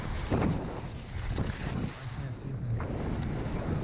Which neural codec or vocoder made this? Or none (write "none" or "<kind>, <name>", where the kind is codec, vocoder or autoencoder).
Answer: none